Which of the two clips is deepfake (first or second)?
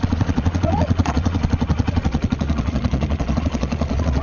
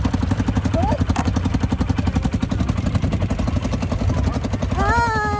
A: first